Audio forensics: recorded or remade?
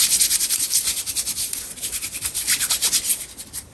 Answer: recorded